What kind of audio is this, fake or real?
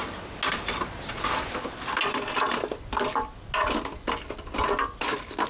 real